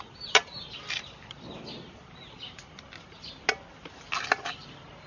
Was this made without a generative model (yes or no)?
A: yes